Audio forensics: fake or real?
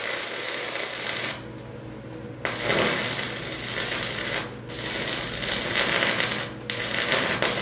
real